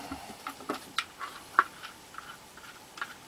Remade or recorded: recorded